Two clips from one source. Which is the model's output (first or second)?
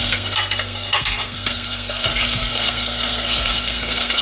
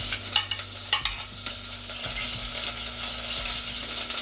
first